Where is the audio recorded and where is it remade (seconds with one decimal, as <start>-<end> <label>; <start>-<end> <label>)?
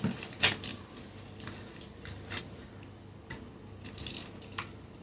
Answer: 0.0-0.7 recorded; 0.7-2.4 remade; 2.4-4.5 recorded; 4.5-5.0 remade